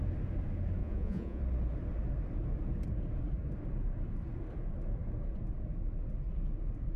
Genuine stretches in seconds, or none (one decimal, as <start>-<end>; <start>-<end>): 0.0-0.8; 1.4-7.0